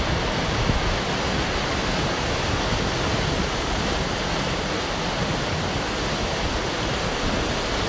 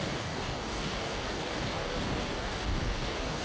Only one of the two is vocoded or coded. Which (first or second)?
second